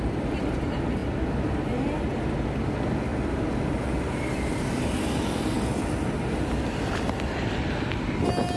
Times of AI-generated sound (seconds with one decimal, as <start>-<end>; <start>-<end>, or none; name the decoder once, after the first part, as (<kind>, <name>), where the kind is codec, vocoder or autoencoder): none